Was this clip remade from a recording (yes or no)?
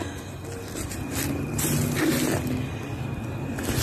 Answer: no